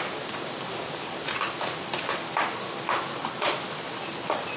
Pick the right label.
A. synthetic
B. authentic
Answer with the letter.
B